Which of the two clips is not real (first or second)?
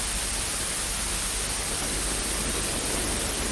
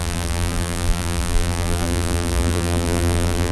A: second